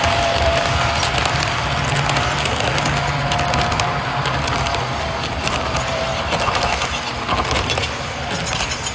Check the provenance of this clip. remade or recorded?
recorded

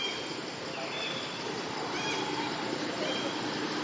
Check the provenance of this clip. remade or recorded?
recorded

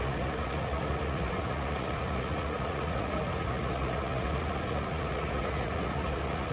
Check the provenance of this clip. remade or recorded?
remade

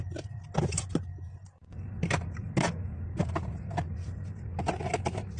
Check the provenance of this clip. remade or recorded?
recorded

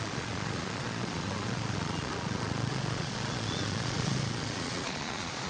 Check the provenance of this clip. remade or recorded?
remade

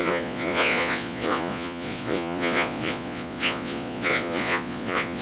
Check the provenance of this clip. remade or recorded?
remade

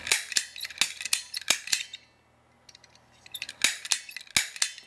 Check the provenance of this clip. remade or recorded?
recorded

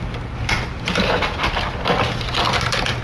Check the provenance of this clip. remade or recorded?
recorded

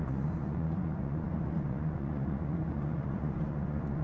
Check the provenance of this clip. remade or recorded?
remade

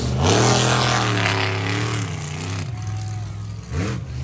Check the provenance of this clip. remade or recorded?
recorded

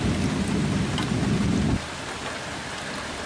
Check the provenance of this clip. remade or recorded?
recorded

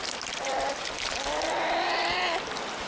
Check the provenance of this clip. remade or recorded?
recorded